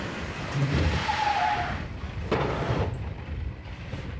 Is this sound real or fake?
fake